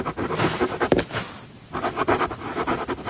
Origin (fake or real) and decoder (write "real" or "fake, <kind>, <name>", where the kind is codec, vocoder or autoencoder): real